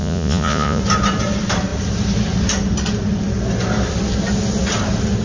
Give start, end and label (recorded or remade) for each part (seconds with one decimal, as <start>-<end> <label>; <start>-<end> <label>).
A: 0.0-0.8 remade; 0.8-5.2 recorded